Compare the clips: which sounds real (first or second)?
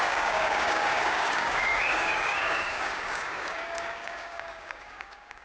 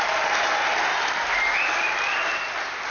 second